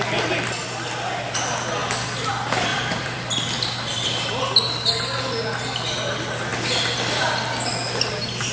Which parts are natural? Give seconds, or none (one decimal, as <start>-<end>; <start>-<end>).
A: 0.0-2.7; 3.3-3.9; 4.4-8.5